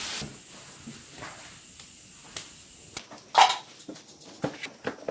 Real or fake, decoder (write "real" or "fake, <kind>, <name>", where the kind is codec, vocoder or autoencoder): real